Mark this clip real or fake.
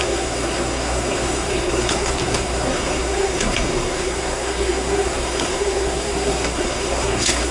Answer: fake